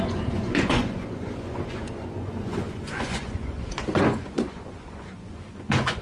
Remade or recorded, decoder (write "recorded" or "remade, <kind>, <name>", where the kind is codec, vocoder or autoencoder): remade, vocoder, Vocos